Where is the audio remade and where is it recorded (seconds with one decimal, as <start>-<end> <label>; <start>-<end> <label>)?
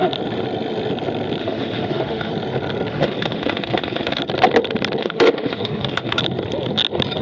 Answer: 0.0-1.4 recorded; 1.4-2.3 remade; 2.3-2.9 recorded; 2.9-4.2 remade; 4.2-5.0 recorded; 5.0-6.2 remade; 6.2-7.2 recorded